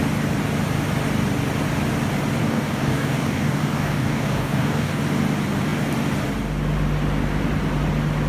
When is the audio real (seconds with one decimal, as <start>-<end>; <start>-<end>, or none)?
0.0-2.4; 5.0-8.3